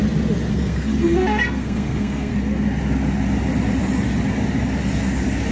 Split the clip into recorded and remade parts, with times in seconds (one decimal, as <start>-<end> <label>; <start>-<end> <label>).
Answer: 0.0-0.5 recorded; 0.5-2.3 remade; 2.3-5.5 recorded